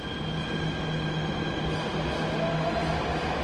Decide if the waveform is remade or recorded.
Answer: recorded